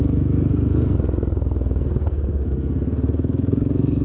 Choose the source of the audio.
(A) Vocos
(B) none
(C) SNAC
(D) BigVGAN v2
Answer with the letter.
C